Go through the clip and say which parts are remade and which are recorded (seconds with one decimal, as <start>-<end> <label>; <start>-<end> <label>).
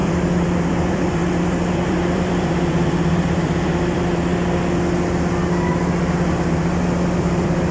0.0-4.3 remade; 4.3-7.2 recorded; 7.2-7.7 remade